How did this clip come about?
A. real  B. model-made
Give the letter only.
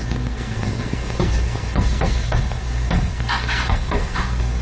B